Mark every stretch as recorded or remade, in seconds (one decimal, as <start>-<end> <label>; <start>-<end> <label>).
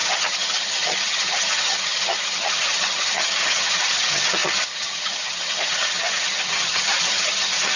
0.0-7.8 remade